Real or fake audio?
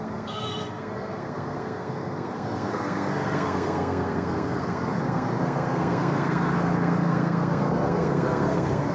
fake